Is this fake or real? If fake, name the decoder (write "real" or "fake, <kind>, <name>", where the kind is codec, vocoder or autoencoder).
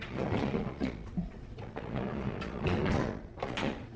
fake, vocoder, Vocos